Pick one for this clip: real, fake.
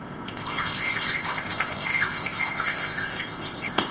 fake